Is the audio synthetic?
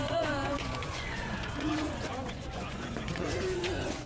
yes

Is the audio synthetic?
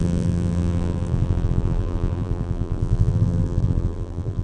yes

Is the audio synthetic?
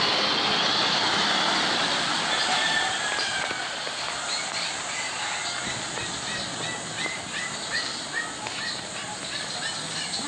no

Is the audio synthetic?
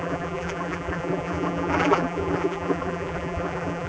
yes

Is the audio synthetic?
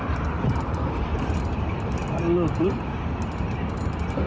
no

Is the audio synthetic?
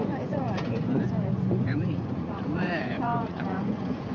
yes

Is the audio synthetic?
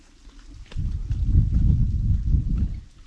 no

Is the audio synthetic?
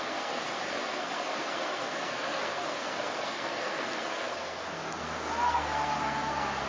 yes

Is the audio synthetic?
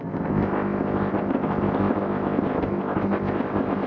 yes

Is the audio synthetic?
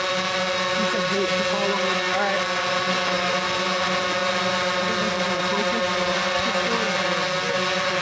no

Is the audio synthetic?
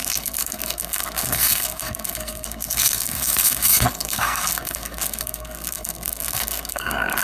yes